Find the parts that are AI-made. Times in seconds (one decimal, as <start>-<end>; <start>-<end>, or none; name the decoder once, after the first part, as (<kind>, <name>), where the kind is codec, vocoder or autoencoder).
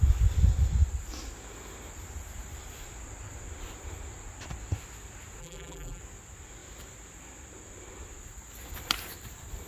5.4-6.0 (vocoder, BigVGAN v2)